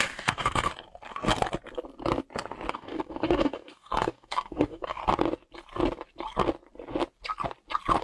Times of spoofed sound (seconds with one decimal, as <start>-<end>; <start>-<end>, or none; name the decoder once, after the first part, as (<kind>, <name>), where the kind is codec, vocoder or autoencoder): 0.0-0.7 (codec, DAC); 2.7-5.0